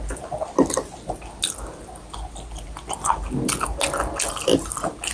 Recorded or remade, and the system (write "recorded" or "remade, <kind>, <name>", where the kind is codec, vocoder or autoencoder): recorded